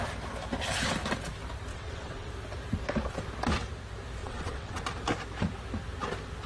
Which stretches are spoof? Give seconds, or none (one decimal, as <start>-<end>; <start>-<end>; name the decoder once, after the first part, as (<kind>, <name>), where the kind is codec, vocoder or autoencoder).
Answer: 1.7-2.3 (vocoder, WaveNeXt); 4.2-4.8